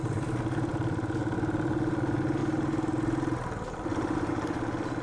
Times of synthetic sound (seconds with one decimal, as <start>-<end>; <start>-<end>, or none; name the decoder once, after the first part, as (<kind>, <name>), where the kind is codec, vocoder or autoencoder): 2.4-4.3 (vocoder, BigVGAN v2)